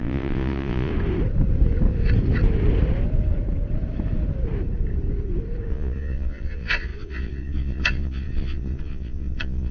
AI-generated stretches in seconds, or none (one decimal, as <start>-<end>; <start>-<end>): 0.0-0.9; 5.7-9.7